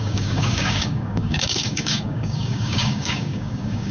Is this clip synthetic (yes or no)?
yes